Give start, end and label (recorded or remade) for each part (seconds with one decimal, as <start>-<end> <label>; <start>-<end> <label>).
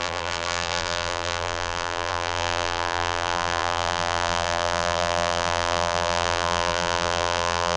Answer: 0.0-7.8 remade